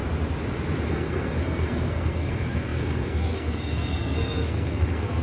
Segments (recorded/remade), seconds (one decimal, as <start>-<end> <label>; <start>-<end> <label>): 0.0-0.9 recorded; 0.9-5.2 remade